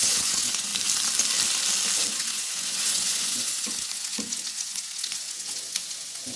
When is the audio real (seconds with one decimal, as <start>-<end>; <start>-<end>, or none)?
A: 0.7-2.1